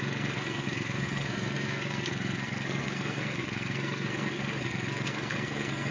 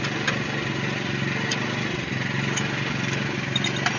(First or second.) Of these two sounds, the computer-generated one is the first